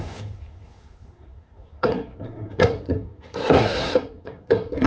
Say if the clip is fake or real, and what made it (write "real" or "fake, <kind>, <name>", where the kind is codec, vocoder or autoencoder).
fake, codec, SNAC